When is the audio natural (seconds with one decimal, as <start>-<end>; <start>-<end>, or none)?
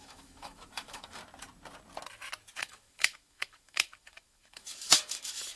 1.2-2.5